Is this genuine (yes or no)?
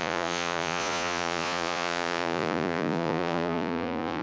no